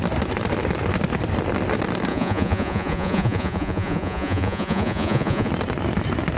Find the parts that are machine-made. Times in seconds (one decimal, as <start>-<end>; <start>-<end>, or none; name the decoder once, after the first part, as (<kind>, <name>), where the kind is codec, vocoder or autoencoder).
2.1-5.5 (vocoder, Vocos)